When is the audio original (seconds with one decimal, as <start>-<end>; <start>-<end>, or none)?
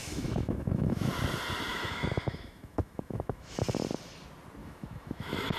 1.1-1.7; 3.6-4.6